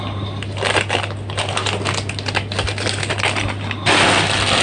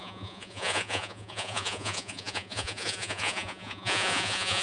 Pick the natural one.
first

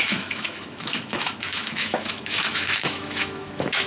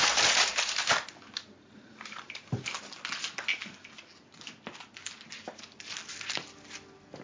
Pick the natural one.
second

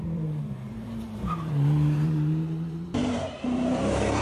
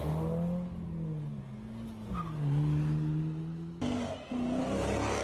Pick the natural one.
second